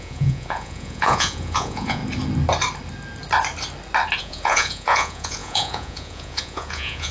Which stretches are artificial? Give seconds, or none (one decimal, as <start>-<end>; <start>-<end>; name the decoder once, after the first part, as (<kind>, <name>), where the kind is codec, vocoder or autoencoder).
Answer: 0.0-2.0 (vocoder, Vocos); 4.2-7.1